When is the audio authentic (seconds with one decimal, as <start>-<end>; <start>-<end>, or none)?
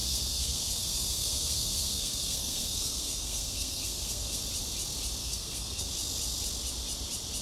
4.4-5.2; 5.9-7.4